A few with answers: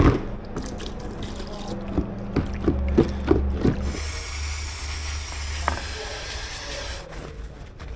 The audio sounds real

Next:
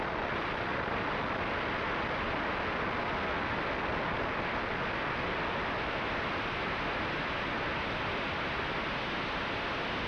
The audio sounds real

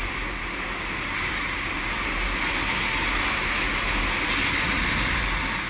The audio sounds real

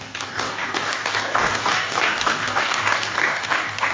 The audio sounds fake